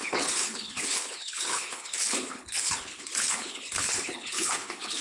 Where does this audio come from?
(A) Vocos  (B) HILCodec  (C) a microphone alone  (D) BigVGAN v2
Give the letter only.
B